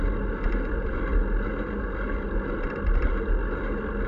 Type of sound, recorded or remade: recorded